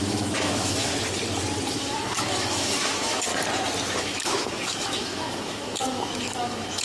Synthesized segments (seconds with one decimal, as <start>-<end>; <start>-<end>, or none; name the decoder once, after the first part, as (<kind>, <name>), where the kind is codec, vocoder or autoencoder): 0.0-0.9 (autoencoder, DAC-VAE); 1.7-3.3; 4.0-6.8